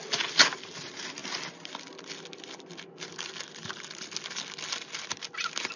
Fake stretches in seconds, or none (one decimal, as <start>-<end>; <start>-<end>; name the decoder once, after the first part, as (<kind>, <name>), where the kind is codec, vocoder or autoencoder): none